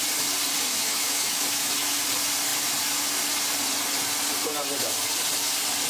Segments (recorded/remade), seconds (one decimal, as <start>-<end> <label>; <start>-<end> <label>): 0.0-0.7 recorded; 0.7-1.7 remade; 1.7-5.9 recorded